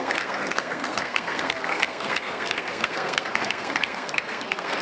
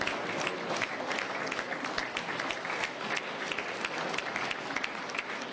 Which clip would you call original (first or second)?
second